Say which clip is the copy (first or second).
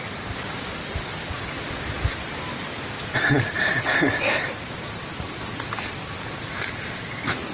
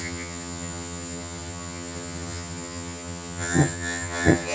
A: second